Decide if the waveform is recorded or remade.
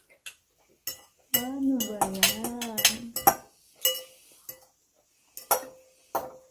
recorded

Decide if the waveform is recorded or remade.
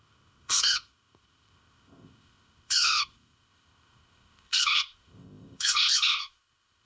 remade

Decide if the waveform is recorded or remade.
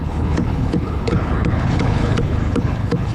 remade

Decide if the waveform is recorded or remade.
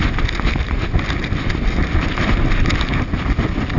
recorded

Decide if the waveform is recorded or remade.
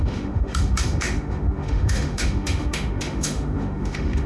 remade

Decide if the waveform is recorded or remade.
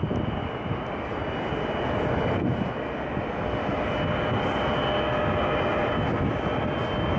recorded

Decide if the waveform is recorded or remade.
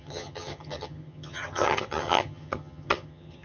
remade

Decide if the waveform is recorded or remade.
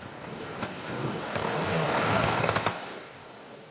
remade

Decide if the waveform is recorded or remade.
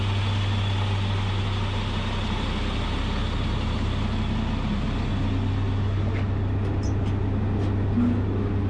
recorded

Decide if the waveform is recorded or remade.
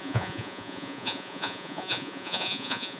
remade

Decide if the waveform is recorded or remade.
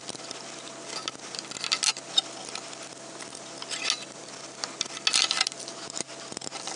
recorded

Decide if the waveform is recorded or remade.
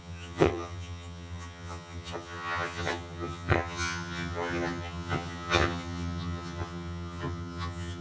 remade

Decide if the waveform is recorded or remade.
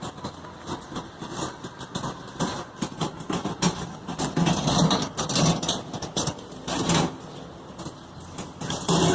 recorded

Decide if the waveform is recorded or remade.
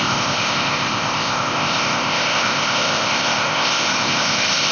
remade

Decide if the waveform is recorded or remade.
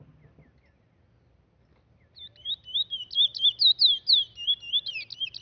recorded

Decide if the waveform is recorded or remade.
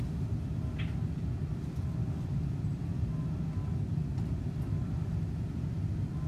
recorded